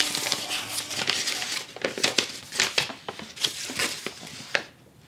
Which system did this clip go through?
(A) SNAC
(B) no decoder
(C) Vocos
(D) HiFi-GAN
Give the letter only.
B